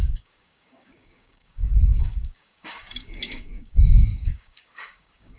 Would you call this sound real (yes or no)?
no